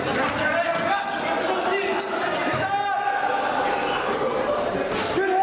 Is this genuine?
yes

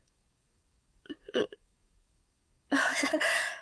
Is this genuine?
no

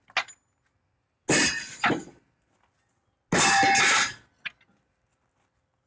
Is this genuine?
yes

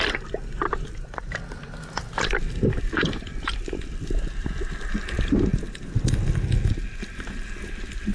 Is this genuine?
yes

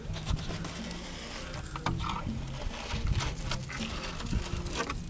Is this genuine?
yes